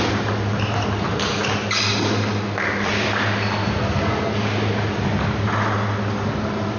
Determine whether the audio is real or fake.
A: real